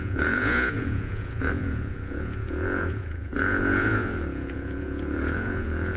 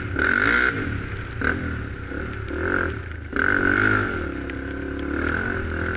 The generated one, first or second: first